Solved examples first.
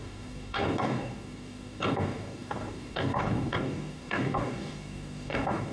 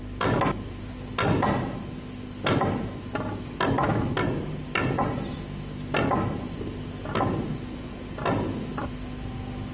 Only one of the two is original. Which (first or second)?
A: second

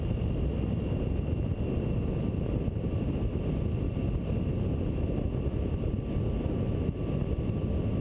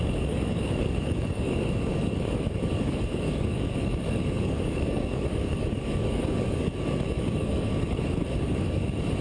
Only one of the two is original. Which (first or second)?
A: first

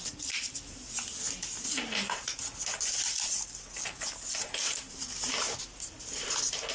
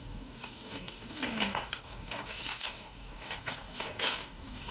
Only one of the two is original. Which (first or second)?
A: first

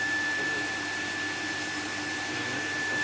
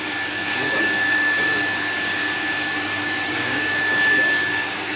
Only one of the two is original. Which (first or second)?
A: first